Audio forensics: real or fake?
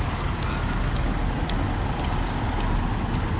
real